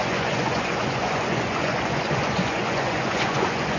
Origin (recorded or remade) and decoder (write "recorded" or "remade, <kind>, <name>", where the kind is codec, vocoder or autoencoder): remade, vocoder, Vocos